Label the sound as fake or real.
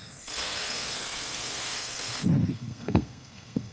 fake